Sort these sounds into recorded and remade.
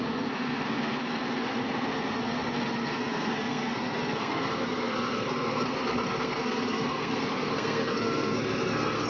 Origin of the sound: remade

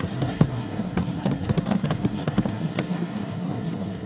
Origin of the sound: remade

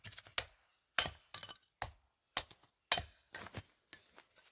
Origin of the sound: recorded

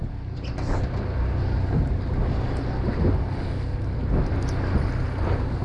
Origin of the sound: recorded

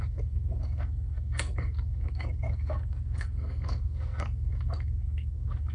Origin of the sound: remade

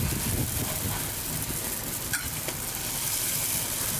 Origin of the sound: recorded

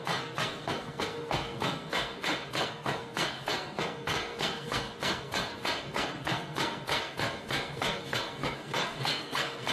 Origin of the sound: remade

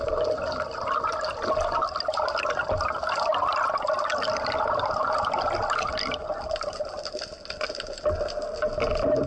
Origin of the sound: recorded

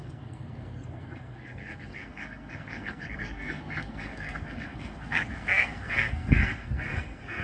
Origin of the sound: remade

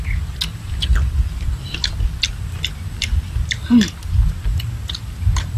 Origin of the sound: recorded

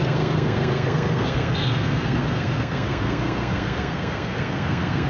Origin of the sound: remade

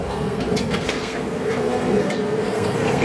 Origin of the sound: remade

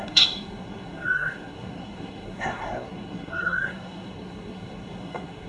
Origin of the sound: remade